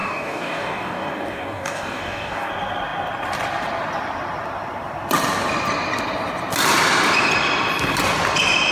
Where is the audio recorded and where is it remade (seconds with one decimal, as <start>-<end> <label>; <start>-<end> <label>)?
0.0-2.5 remade; 2.5-8.7 recorded